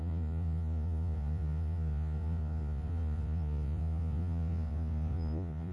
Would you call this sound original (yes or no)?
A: no